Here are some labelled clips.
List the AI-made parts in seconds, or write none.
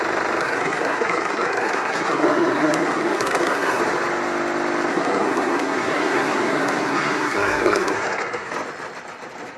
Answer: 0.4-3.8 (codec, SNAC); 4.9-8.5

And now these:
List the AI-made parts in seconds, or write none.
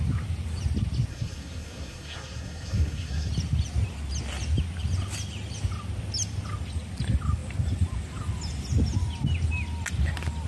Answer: 1.1-3.3 (codec, SNAC)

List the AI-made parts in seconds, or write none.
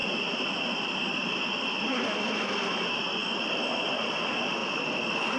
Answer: none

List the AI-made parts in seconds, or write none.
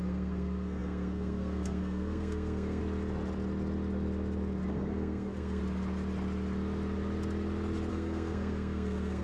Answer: 0.0-2.8 (codec, SNAC); 4.7-5.6; 7.9-9.2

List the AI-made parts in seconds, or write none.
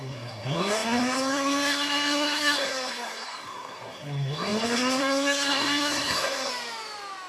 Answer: 0.0-6.5 (codec, SNAC)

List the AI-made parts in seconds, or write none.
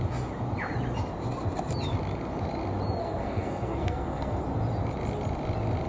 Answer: 3.0-4.4 (codec, SNAC)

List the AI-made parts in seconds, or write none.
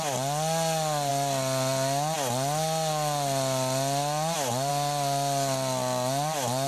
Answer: none